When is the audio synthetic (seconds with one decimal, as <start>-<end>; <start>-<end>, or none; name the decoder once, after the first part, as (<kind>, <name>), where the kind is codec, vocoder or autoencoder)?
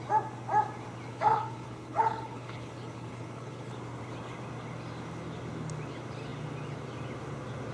1.1-3.7 (codec, HILCodec)